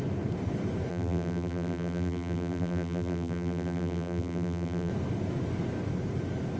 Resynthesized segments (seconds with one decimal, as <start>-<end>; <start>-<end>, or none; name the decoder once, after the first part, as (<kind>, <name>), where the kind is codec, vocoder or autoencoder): 0.9-4.9 (vocoder, BigVGAN v2)